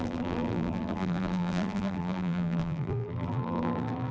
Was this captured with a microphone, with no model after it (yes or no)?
no